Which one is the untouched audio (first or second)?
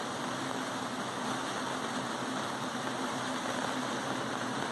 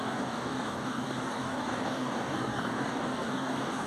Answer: first